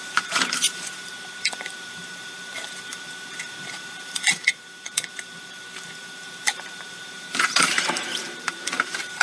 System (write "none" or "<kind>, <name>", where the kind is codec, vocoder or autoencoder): vocoder, BigVGAN v2